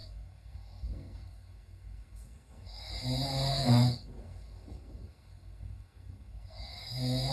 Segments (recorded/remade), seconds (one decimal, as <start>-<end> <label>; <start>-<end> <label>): 0.0-2.9 remade; 2.9-3.5 recorded; 3.5-7.3 remade